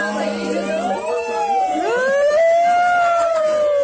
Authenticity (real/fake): real